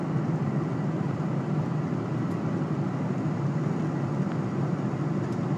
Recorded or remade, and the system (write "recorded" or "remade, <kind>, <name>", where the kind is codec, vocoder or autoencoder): recorded